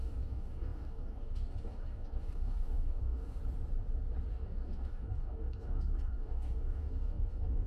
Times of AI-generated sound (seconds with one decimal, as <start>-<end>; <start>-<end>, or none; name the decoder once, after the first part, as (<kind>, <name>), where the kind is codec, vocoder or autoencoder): 0.0-3.4 (codec, DAC); 4.3-7.7